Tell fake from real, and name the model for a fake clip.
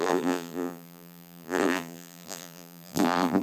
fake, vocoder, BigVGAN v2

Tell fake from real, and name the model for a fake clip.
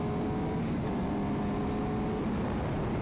real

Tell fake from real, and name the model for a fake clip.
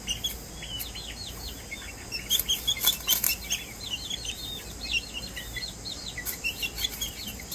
real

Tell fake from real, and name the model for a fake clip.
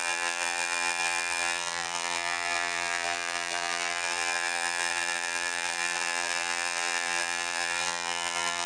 fake, vocoder, BigVGAN v2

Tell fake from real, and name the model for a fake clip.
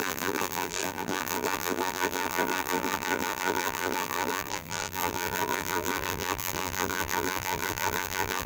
fake, vocoder, BigVGAN v2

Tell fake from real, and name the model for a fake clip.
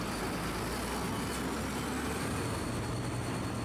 real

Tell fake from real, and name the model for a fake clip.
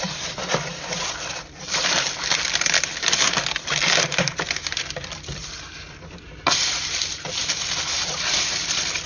fake, vocoder, BigVGAN v2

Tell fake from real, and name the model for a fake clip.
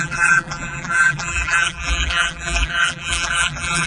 fake, vocoder, BigVGAN v2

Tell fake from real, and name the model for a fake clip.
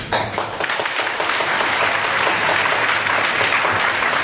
real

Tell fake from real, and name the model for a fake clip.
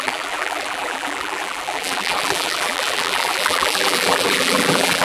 fake, vocoder, BigVGAN v2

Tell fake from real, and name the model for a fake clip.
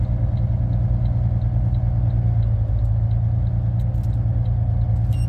real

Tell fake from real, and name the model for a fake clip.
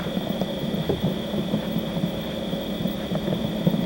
fake, vocoder, BigVGAN v2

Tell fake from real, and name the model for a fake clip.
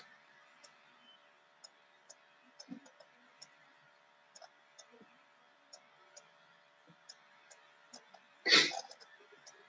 real